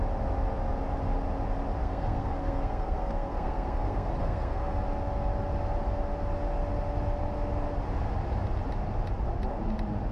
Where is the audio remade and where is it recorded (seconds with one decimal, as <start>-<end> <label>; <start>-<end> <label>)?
0.0-1.8 recorded; 1.8-4.8 remade; 4.8-10.1 recorded